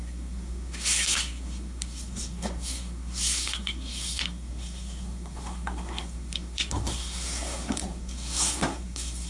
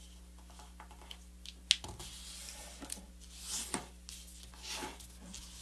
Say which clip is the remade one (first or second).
first